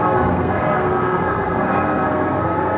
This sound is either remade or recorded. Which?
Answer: remade